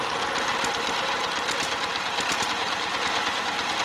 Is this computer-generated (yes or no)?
yes